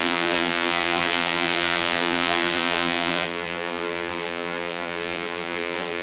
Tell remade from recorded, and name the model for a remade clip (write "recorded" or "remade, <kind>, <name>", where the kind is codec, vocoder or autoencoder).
remade, vocoder, BigVGAN v2